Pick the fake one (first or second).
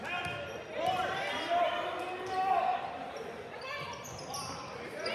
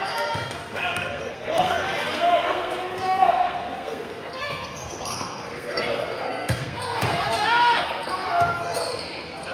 second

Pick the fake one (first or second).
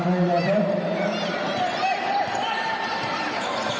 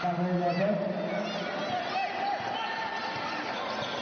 first